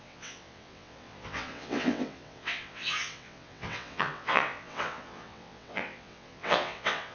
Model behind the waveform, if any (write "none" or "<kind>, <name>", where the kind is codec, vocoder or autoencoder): vocoder, WaveNeXt